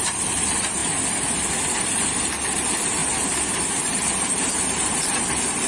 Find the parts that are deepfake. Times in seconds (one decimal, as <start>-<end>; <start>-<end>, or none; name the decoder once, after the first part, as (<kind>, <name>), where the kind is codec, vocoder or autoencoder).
0.0-3.0 (vocoder, BigVGAN v2); 4.5-5.7